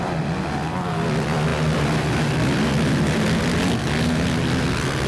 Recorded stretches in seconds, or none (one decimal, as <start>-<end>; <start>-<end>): 0.0-5.1